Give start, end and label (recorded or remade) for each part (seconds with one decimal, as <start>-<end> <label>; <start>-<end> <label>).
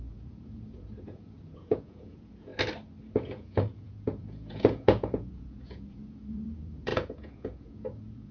0.0-2.5 remade; 2.5-3.1 recorded; 3.1-8.3 remade